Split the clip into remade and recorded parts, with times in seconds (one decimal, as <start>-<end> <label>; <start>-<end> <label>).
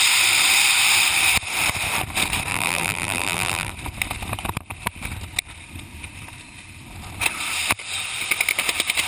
0.0-2.5 recorded; 2.5-3.7 remade; 3.7-9.1 recorded